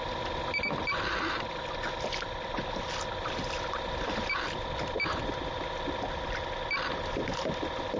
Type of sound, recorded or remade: recorded